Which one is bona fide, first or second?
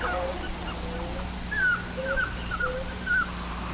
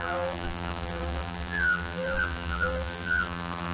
first